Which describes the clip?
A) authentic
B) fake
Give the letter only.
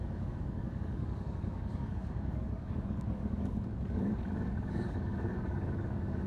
B